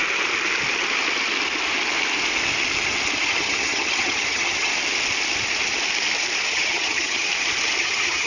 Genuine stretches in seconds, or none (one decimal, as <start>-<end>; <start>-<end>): 0.0-3.2; 4.7-6.5; 7.3-7.8